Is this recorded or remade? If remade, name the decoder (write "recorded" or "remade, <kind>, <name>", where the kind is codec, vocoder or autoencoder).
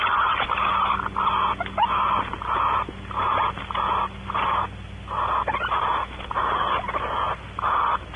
recorded